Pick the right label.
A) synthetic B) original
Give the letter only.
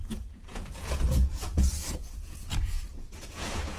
A